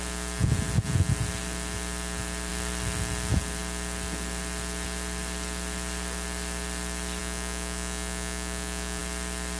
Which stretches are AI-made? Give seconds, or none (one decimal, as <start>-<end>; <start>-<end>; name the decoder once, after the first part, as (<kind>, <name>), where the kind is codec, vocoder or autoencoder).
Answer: 7.2-9.0 (autoencoder, DAC-VAE)